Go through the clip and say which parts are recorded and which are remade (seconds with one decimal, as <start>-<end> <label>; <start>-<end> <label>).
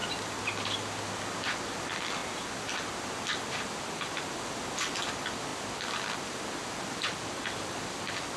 0.0-8.4 recorded